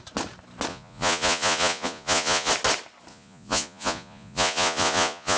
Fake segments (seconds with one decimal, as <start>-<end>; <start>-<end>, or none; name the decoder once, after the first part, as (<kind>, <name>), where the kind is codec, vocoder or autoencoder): 0.7-2.5 (vocoder, Vocos); 3.1-5.4